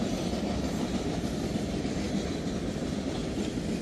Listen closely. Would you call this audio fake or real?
real